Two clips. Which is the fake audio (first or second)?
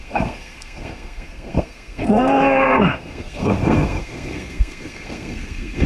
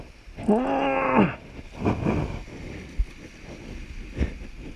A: first